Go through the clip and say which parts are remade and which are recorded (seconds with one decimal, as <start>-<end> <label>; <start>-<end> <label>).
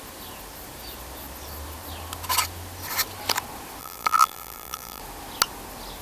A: 0.0-3.8 recorded; 3.8-5.0 remade; 5.0-6.0 recorded